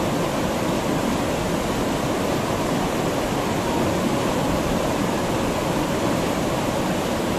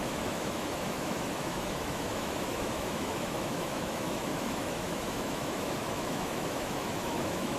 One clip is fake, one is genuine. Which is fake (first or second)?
second